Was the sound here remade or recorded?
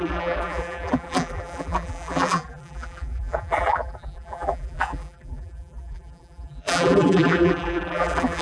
remade